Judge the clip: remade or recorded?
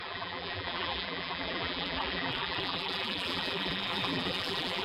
remade